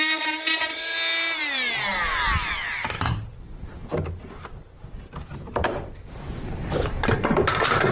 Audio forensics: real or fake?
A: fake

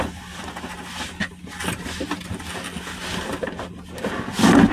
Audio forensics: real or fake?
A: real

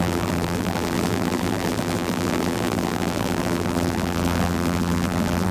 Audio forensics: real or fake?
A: fake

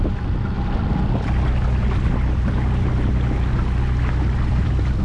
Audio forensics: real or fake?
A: real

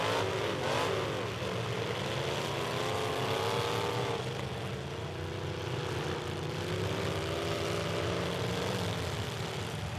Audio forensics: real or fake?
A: real